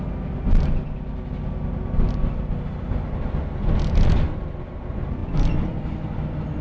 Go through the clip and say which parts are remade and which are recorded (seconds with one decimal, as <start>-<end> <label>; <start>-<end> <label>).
0.0-6.6 recorded